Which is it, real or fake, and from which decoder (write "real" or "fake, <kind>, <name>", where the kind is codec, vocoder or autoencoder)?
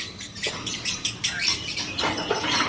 fake, vocoder, BigVGAN v2